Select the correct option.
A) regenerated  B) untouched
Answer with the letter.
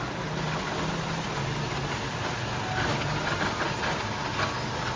B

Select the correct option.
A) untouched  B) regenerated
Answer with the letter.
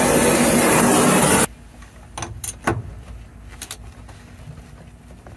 A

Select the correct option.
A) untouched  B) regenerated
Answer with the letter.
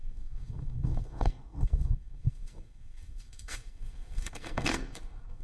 B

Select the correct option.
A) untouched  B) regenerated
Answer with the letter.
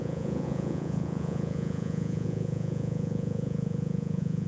B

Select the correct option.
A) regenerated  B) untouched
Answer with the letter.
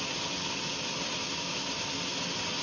B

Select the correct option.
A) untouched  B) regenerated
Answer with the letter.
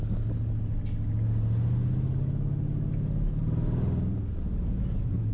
A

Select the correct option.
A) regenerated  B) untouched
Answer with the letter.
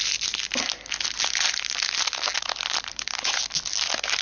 B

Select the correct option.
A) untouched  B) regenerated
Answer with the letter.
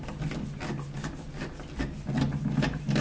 A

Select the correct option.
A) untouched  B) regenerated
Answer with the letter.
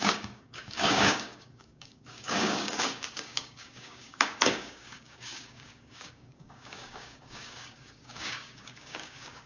B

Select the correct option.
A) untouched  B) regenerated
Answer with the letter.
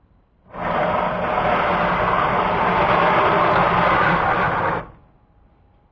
A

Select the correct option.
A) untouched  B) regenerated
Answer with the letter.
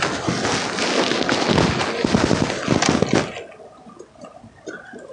A